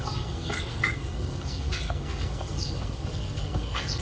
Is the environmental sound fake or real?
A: fake